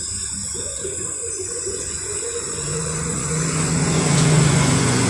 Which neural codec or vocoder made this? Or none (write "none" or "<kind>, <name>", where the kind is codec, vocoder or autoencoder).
vocoder, Vocos